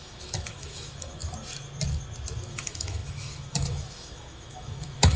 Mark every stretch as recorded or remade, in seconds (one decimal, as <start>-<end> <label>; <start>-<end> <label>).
0.0-1.2 remade; 1.2-2.5 recorded; 2.5-5.2 remade